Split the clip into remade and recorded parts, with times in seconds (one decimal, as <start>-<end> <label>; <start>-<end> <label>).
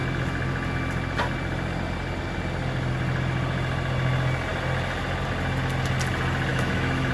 0.0-6.5 recorded; 6.5-7.1 remade